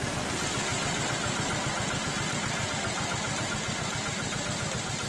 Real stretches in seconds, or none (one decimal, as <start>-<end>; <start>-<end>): 0.0-5.1